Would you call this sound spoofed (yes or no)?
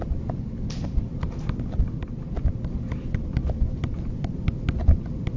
no